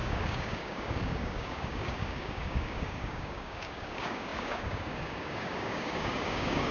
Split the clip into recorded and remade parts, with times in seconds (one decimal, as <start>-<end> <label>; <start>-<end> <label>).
0.0-6.7 remade